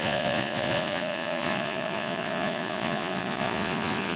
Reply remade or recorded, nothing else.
remade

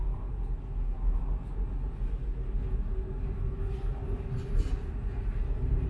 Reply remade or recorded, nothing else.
recorded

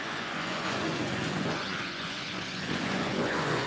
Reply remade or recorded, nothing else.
remade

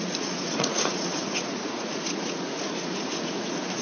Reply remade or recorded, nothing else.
remade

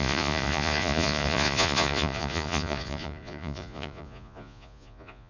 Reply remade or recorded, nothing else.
remade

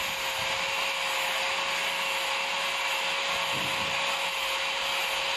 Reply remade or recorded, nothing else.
recorded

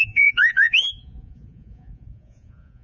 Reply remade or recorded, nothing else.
remade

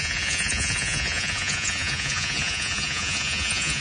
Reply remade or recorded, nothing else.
remade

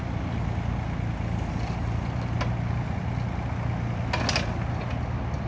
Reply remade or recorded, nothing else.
recorded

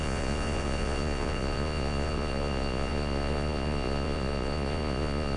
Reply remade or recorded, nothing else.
remade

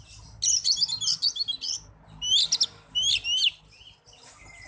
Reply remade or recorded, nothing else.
recorded